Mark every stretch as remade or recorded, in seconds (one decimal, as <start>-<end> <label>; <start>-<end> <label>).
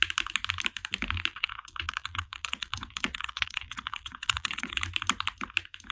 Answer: 0.0-1.3 recorded; 1.3-4.8 remade; 4.8-5.9 recorded